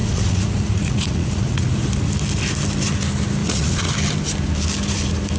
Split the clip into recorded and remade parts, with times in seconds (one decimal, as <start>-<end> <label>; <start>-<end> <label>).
0.0-1.8 remade; 1.8-3.4 recorded; 3.4-3.9 remade; 3.9-5.4 recorded